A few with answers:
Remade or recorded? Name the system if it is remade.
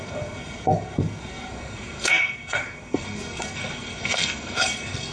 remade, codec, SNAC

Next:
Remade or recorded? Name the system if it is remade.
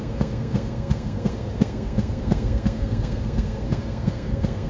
remade, codec, SNAC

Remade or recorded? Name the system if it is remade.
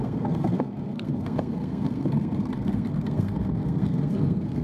remade, codec, SNAC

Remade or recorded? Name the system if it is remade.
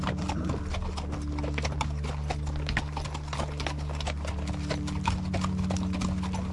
recorded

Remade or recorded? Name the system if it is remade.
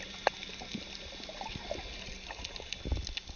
recorded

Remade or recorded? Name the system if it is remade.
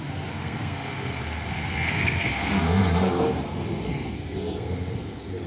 remade, codec, SNAC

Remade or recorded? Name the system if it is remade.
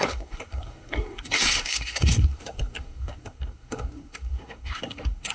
remade, codec, SNAC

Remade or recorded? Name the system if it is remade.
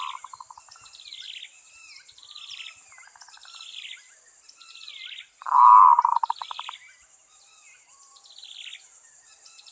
recorded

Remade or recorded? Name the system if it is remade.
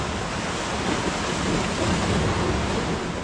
recorded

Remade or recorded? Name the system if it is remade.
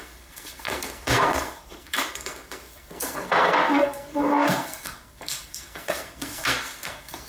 remade, codec, SNAC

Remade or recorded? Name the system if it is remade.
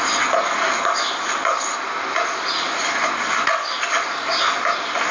recorded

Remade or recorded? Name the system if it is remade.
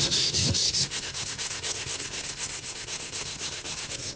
remade, codec, SNAC